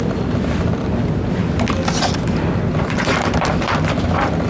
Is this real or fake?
real